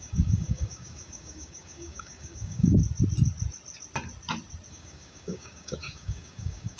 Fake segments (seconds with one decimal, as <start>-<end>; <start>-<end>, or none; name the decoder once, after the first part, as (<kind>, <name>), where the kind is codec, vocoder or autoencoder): 0.0-2.8 (codec, DAC); 4.7-6.8